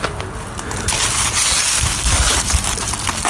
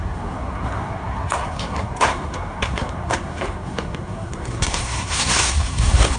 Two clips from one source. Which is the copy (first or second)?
second